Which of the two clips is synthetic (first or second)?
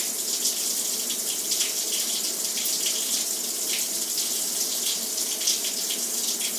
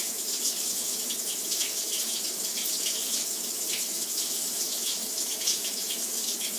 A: second